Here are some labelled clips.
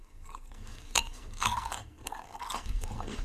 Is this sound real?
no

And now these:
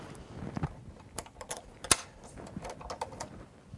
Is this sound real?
yes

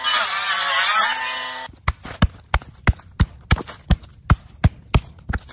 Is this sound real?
yes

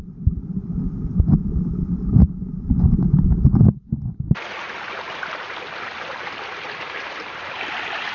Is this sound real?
yes